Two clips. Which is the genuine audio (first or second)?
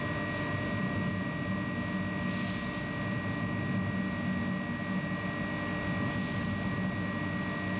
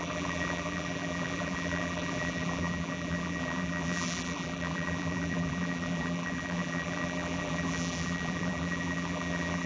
first